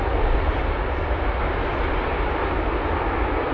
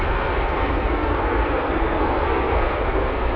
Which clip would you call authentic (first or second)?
first